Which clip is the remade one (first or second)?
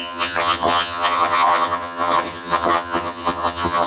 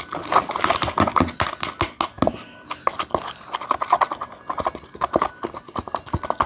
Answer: first